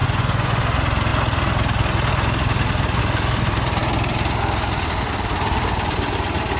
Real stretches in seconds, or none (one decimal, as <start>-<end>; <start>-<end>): 0.6-6.6